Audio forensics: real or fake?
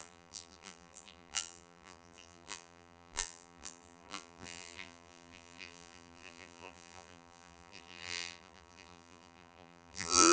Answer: fake